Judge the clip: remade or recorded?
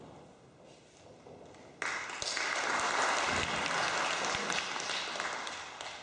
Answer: recorded